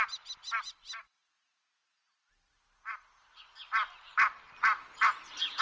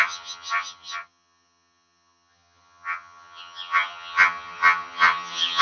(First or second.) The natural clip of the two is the first